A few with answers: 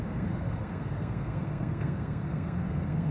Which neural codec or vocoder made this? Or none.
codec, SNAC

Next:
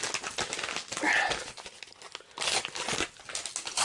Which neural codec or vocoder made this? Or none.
none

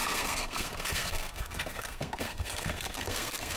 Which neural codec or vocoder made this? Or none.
codec, SNAC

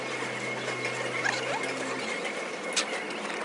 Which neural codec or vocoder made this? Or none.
none